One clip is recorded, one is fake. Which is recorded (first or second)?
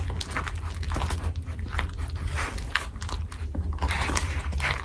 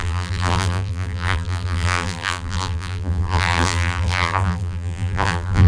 first